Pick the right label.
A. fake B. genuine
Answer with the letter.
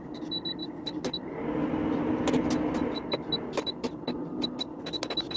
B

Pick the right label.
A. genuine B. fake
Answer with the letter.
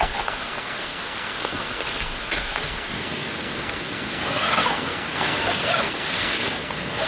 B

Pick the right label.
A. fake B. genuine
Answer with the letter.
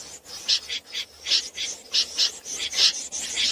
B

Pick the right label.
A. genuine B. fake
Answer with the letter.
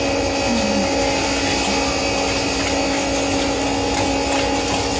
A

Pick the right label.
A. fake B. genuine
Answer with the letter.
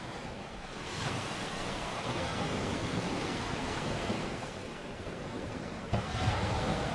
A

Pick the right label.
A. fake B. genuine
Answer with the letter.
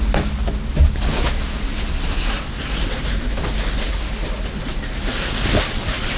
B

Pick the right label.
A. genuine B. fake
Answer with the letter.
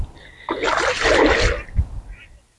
A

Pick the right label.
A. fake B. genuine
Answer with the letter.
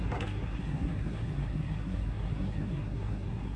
A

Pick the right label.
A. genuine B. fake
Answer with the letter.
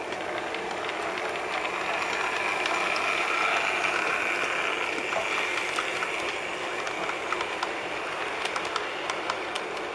A